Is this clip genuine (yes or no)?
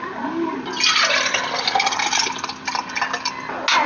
yes